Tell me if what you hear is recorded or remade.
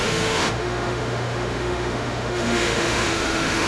remade